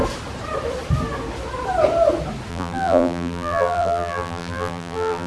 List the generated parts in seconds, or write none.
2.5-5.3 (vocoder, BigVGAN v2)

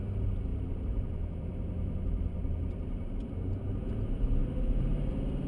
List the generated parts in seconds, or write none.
0.5-3.1 (vocoder, BigVGAN v2); 4.4-5.1

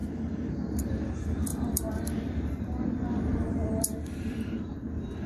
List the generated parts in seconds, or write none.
1.5-4.7 (vocoder, BigVGAN v2)

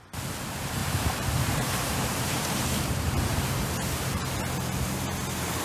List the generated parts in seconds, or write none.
0.8-4.2 (vocoder, BigVGAN v2)

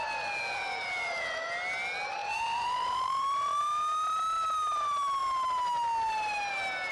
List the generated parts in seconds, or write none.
2.2-3.6 (vocoder, BigVGAN v2)

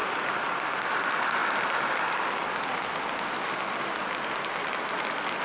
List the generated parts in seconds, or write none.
none

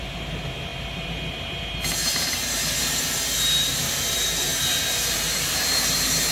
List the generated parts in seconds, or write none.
0.0-6.3 (vocoder, BigVGAN v2)

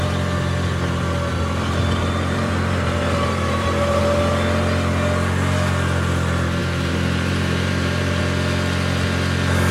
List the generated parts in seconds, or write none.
2.0-4.0 (vocoder, BigVGAN v2); 6.6-8.2